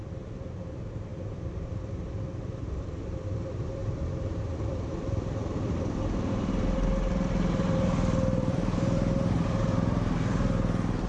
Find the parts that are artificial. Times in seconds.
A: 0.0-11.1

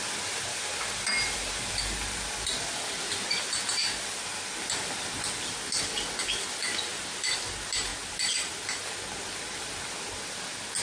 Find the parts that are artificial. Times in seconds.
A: none